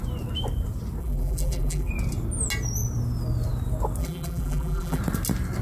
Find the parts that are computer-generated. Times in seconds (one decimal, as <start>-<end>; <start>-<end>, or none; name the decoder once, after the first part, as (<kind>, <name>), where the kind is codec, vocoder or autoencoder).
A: 1.0-1.9 (vocoder, BigVGAN v2); 4.0-5.0